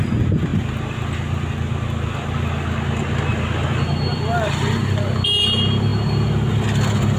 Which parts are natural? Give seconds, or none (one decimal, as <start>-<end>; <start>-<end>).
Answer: 0.0-7.2